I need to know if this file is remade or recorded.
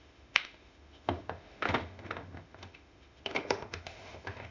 remade